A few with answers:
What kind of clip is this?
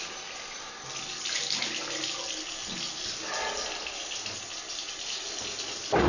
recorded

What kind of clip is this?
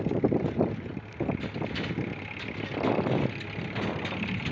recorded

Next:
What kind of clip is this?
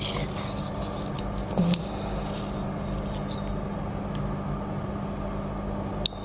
recorded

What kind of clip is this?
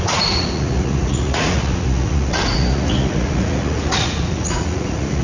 remade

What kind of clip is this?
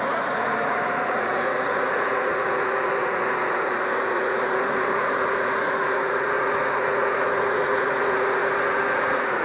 remade